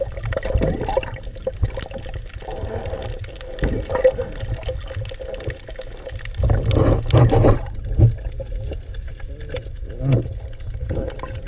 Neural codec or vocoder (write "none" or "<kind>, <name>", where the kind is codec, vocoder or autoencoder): none